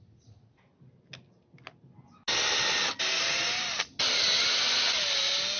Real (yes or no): yes